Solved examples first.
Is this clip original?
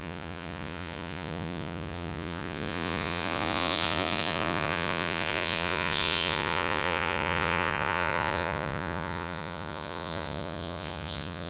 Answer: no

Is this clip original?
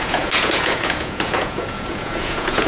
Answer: no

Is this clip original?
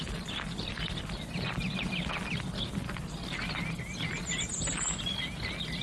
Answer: yes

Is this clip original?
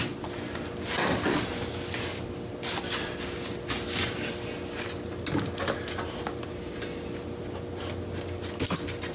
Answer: yes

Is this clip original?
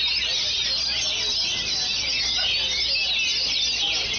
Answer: yes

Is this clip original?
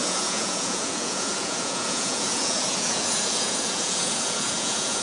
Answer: no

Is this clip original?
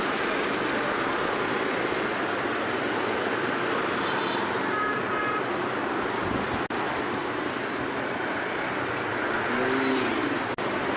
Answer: yes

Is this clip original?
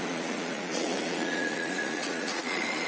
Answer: no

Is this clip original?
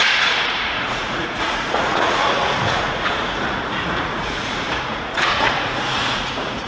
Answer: no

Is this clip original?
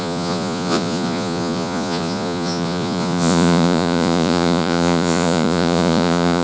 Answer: no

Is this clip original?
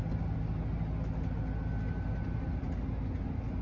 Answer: yes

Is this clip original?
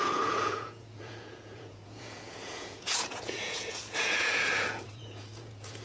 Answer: no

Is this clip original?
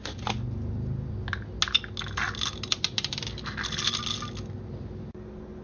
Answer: yes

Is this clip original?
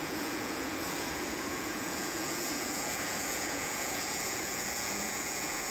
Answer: no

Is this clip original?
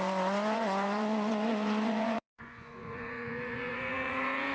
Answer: no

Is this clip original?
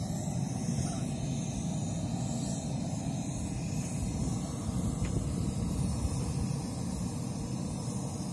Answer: yes